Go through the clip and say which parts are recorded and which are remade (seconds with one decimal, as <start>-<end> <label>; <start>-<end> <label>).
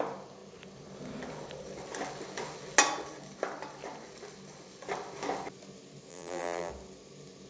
0.0-6.1 recorded; 6.1-6.7 remade; 6.7-7.5 recorded